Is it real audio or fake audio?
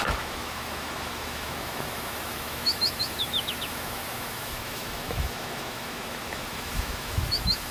fake